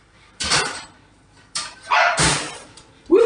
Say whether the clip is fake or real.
fake